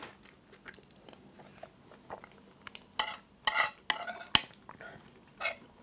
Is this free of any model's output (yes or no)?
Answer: yes